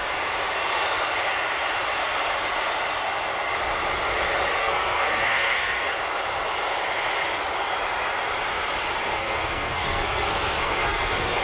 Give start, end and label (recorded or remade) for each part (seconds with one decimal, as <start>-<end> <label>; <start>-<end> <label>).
0.0-4.6 recorded; 4.6-5.9 remade; 5.9-9.1 recorded; 9.1-11.4 remade